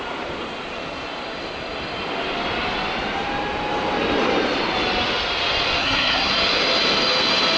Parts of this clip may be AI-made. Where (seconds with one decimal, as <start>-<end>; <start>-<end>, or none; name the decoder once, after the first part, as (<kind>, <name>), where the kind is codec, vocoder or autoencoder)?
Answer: 5.8-6.3 (codec, SNAC)